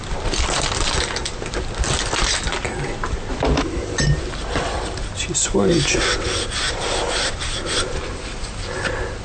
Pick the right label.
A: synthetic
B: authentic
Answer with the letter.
B